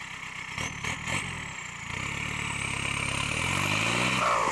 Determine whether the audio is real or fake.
real